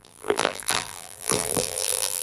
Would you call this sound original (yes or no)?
no